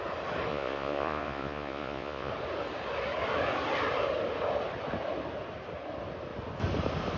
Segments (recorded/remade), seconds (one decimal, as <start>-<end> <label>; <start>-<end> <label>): 0.0-0.5 recorded; 0.5-2.3 remade; 2.3-7.2 recorded